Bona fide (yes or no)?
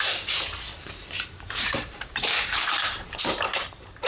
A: no